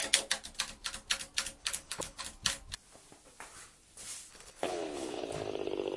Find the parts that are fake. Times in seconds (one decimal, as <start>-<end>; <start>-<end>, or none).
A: 1.6-2.2; 4.3-5.2